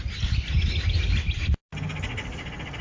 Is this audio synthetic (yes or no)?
no